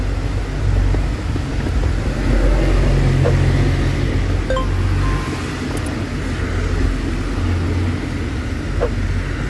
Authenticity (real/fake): real